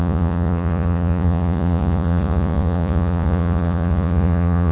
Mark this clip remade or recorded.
remade